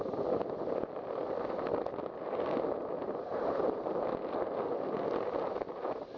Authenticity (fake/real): real